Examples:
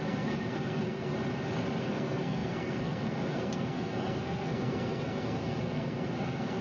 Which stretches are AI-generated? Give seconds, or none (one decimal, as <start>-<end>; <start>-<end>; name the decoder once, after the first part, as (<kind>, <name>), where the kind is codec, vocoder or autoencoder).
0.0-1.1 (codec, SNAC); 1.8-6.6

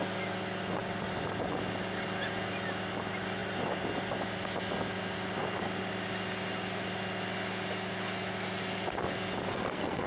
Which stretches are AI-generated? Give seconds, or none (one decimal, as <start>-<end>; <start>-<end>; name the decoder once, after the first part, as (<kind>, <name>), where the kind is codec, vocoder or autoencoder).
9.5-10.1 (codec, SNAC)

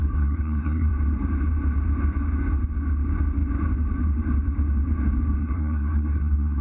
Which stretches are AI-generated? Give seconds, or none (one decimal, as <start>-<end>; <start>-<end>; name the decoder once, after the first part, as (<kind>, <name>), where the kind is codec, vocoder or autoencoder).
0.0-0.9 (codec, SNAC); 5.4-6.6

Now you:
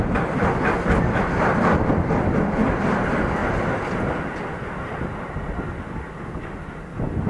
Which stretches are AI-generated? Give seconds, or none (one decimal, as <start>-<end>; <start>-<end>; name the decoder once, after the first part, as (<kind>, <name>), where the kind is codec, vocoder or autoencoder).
none